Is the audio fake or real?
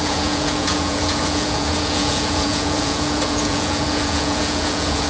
fake